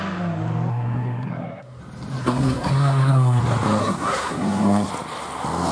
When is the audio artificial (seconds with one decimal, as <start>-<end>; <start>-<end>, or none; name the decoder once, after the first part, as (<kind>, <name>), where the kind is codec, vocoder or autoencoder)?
0.7-1.8 (codec, SNAC); 2.2-3.4; 3.8-4.9